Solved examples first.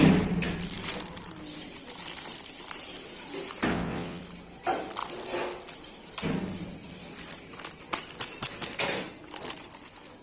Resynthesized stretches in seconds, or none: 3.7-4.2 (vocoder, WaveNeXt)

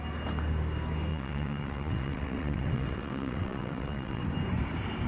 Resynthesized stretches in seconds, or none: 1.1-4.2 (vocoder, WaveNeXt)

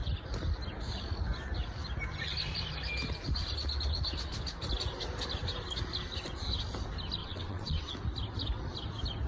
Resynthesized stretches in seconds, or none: 7.2-7.9 (vocoder, WaveNeXt)

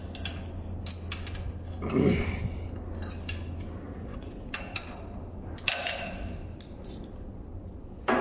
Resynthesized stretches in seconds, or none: 4.0-4.5 (vocoder, WaveNeXt)

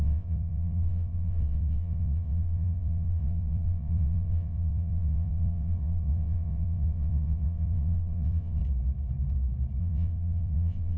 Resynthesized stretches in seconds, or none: 0.0-8.6 (vocoder, WaveNeXt); 9.8-11.0

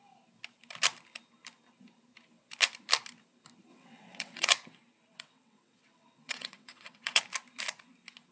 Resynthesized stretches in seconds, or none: 3.7-4.5 (vocoder, WaveNeXt); 5.1-7.2

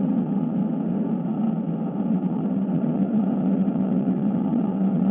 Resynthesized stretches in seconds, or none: 0.0-0.6 (vocoder, WaveNeXt); 2.1-5.1